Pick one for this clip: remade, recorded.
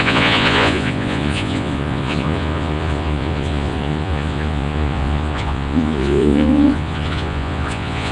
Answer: remade